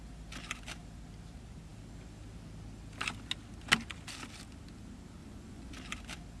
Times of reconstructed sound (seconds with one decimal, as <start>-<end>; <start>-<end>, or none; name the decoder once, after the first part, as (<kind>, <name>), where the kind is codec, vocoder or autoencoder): 5.2-5.7 (vocoder, Vocos)